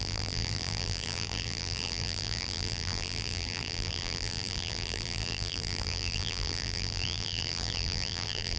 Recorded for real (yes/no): no